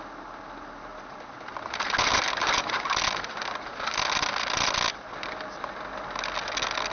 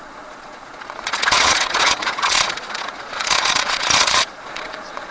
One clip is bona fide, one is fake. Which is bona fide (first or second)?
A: first